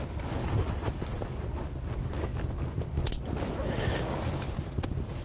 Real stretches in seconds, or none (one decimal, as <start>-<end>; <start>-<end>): 0.0-0.4; 1.9-5.2